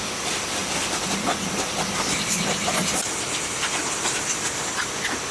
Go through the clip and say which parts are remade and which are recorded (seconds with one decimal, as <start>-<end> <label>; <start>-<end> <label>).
0.0-5.3 recorded